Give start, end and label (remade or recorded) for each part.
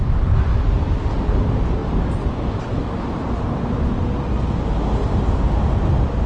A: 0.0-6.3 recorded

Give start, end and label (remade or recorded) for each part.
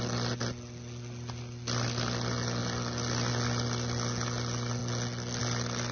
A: 0.0-5.9 recorded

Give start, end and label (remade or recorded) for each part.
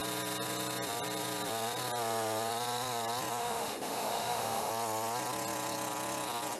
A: 0.0-3.4 recorded; 3.4-4.7 remade; 4.7-6.6 recorded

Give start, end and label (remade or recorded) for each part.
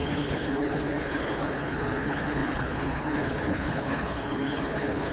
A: 0.0-5.1 remade